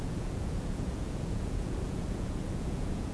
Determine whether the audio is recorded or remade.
remade